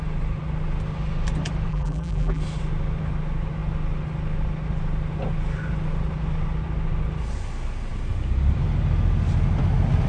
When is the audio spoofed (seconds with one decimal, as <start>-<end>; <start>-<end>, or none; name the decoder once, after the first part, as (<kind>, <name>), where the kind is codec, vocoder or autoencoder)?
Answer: 1.7-2.4 (vocoder, BigVGAN v2)